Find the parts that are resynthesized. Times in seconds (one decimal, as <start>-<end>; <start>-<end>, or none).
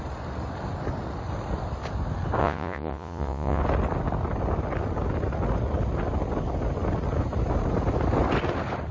2.4-3.6